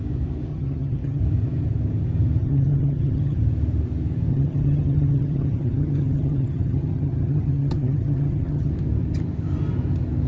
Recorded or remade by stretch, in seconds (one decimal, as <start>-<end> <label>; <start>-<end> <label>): 0.0-0.5 recorded; 0.5-1.2 remade; 1.2-2.4 recorded; 2.4-3.4 remade; 3.4-4.3 recorded; 4.3-8.7 remade; 8.7-10.3 recorded